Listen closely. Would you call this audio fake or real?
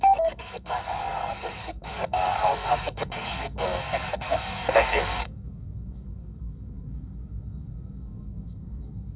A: fake